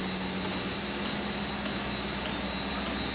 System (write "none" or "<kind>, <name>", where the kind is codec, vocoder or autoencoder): none